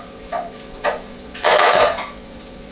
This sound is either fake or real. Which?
fake